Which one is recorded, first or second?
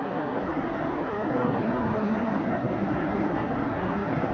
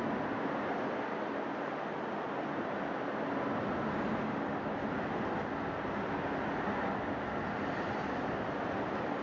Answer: second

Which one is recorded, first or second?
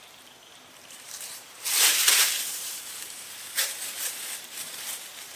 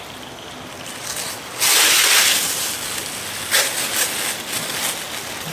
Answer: second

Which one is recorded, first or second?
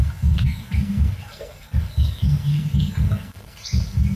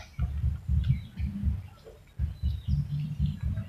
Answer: second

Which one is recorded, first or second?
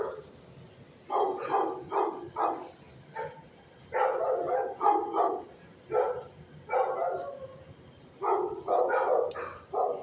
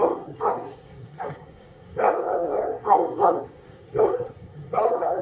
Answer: first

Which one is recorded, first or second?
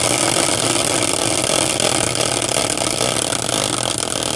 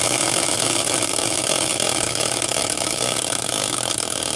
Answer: first